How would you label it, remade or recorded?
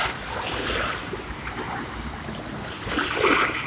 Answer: recorded